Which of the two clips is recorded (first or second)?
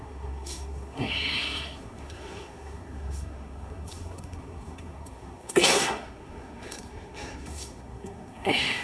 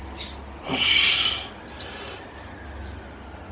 second